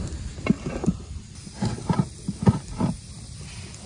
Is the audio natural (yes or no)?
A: yes